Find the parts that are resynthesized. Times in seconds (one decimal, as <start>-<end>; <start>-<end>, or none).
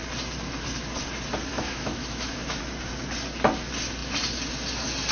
1.5-2.6